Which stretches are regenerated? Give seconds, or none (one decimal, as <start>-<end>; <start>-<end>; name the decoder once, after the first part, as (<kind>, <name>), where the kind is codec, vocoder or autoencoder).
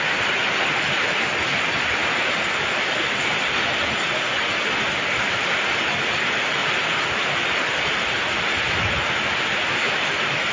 2.0-3.5 (vocoder, BigVGAN v2)